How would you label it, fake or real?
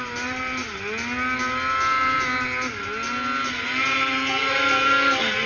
real